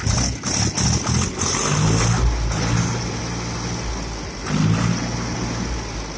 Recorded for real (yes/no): yes